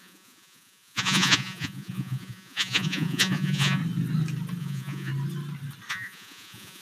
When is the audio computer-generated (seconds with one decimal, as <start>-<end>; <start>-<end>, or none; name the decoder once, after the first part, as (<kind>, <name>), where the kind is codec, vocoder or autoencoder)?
0.0-3.8 (vocoder, Vocos); 4.6-5.1; 5.9-6.8